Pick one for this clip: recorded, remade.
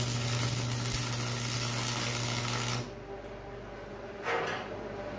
recorded